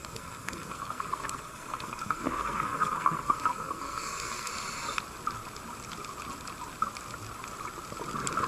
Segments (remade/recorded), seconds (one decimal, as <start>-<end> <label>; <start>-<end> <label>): 0.0-4.5 remade; 4.5-8.5 recorded